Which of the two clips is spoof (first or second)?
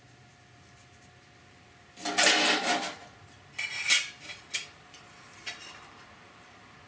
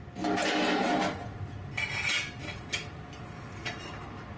first